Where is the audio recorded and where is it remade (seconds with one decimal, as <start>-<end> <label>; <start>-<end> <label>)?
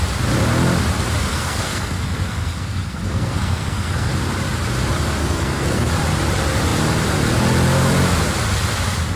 0.0-1.3 recorded; 1.3-4.1 remade; 4.1-5.2 recorded; 5.2-5.9 remade; 5.9-9.2 recorded